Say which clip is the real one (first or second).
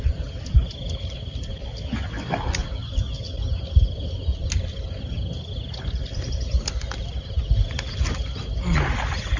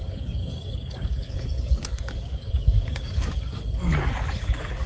first